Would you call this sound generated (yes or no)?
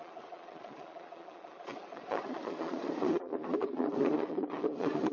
yes